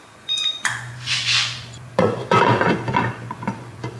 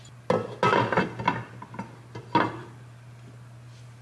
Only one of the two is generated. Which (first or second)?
first